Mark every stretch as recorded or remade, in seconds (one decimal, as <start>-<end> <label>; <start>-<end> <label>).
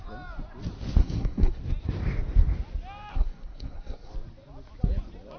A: 0.0-1.0 recorded; 1.0-1.6 remade; 1.6-3.1 recorded; 3.1-4.1 remade; 4.1-5.4 recorded